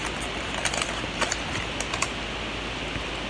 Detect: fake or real real